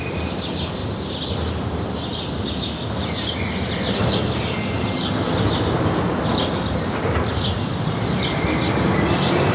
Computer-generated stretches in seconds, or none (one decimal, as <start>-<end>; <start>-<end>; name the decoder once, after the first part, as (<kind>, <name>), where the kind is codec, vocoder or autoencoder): none